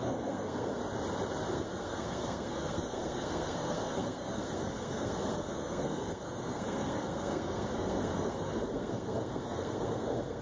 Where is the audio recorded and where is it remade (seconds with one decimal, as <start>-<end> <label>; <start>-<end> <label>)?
0.0-0.8 remade; 0.8-1.5 recorded; 1.5-10.4 remade